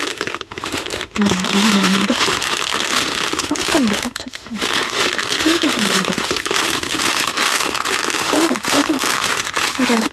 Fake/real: fake